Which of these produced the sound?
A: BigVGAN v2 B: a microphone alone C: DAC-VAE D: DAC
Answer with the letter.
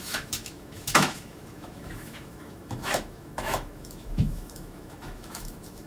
C